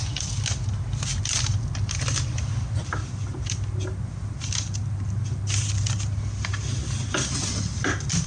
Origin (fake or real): real